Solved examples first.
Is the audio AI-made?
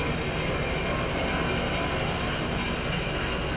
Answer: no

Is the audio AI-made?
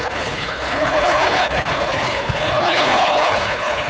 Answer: yes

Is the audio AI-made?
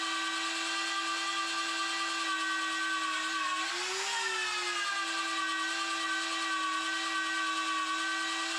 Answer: no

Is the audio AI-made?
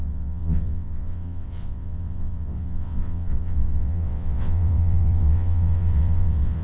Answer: yes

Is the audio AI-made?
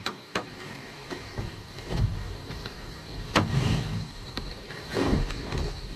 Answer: yes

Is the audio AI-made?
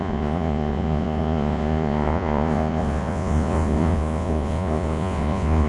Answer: yes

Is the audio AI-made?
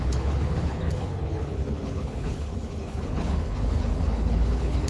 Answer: yes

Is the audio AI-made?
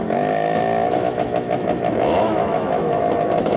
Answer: yes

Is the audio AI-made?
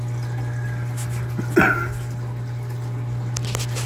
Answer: no